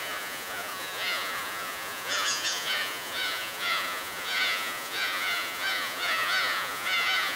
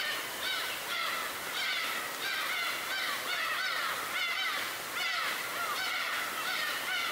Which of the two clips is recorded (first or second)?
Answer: second